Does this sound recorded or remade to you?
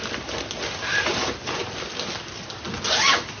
recorded